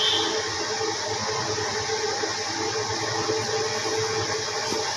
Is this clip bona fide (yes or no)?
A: yes